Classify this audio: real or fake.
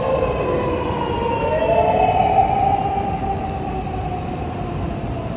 real